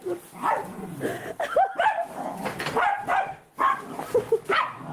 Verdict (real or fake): real